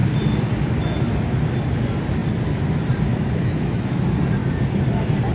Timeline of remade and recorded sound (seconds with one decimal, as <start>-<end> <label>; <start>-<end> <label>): 0.0-3.1 recorded; 3.1-4.0 remade; 4.0-5.3 recorded